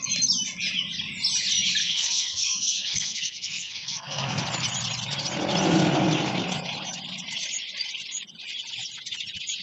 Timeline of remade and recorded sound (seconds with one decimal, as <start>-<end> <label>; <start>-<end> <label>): 0.0-1.8 recorded; 1.8-4.4 remade; 4.4-9.6 recorded